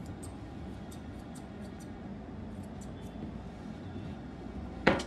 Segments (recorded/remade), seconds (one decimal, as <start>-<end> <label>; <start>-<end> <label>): 0.0-2.1 remade; 2.1-3.5 recorded; 3.5-5.1 remade